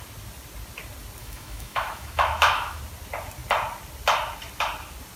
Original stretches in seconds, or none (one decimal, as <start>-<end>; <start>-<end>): 0.0-1.2; 2.8-5.2

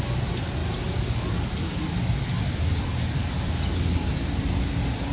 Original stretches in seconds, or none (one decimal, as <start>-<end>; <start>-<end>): 0.0-5.1

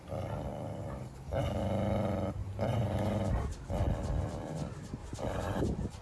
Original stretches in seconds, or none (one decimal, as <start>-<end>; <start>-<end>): 0.0-2.4; 3.6-5.0; 5.6-6.0

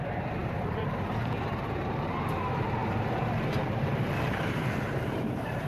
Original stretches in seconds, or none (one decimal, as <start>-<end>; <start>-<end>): none

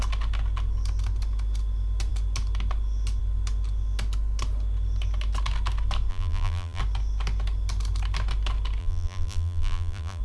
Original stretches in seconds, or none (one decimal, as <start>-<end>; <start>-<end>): 0.0-6.1; 6.8-8.8